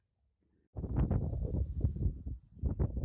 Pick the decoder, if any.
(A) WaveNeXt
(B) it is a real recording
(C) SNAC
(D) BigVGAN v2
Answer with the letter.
B